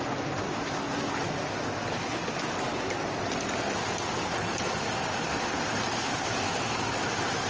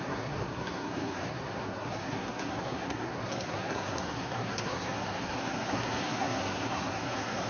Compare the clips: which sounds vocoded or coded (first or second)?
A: second